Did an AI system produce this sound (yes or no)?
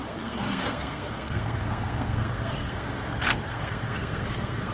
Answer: yes